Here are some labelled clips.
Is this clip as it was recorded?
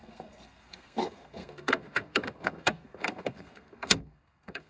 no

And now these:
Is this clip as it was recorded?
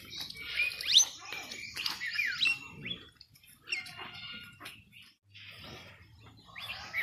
yes